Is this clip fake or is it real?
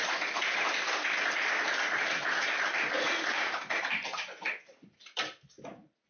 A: real